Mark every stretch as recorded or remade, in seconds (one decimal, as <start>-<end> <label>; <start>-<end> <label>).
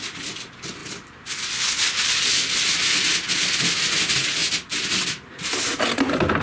0.0-0.8 recorded; 0.8-3.1 remade; 3.1-6.4 recorded